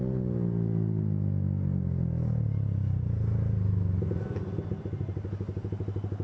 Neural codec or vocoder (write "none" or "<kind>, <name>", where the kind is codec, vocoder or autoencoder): none